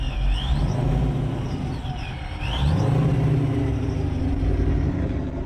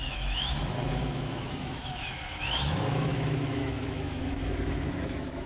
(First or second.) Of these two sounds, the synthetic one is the second